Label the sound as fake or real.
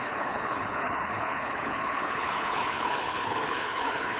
fake